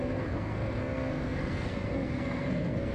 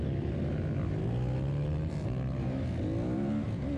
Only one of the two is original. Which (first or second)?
second